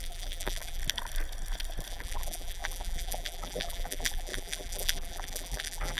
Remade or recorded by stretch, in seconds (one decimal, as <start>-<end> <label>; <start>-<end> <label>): 0.0-0.8 remade; 0.8-1.9 recorded; 1.9-6.0 remade